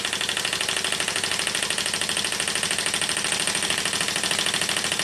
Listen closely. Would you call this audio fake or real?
real